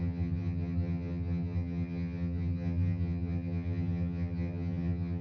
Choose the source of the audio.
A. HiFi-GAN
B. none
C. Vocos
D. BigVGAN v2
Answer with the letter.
A